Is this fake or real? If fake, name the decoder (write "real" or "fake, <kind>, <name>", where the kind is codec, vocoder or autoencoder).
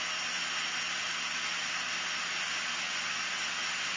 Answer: real